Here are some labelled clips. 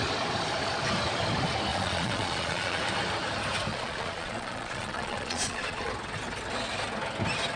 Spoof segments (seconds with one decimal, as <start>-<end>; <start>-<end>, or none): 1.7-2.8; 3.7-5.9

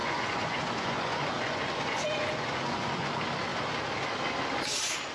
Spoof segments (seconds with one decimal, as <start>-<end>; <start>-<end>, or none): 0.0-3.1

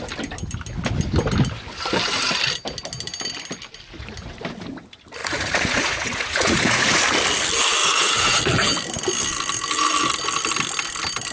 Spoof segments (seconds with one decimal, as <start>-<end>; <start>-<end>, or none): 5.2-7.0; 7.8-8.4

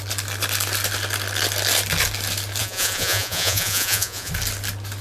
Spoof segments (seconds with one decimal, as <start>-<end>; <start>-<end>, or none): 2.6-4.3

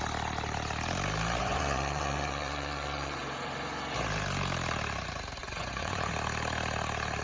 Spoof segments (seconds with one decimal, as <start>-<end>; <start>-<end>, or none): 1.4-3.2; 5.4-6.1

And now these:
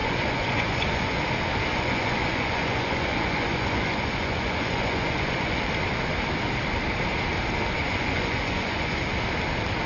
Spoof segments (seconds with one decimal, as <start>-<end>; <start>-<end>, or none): 0.0-1.2; 1.7-5.6; 7.8-9.0

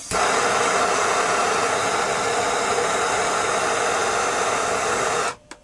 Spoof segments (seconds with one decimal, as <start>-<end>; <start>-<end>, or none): none